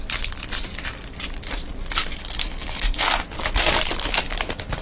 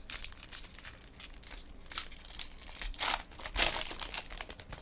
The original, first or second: second